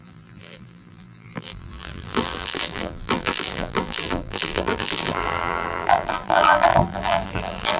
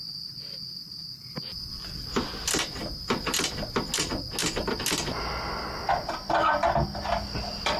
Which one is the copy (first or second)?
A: first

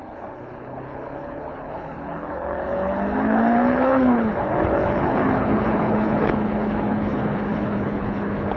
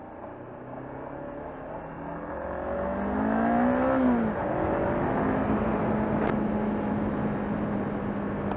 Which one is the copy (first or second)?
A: first